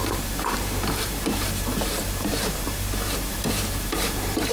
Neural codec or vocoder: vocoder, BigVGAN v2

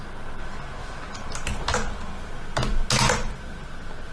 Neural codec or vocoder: none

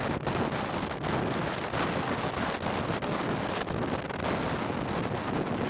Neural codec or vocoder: none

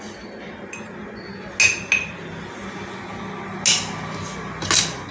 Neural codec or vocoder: none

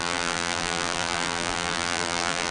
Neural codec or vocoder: vocoder, BigVGAN v2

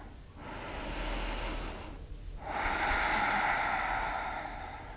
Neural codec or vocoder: none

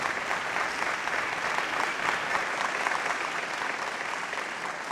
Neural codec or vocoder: none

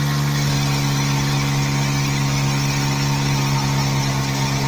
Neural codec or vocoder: none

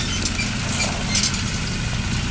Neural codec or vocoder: none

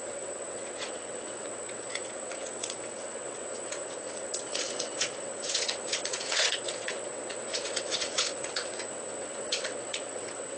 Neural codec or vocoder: vocoder, WaveNeXt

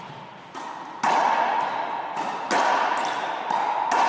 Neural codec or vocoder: none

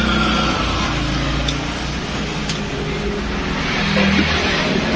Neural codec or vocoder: none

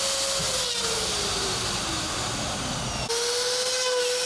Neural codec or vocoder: none